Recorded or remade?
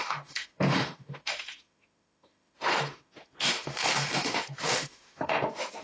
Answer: remade